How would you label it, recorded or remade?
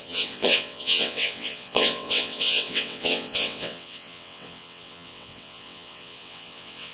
remade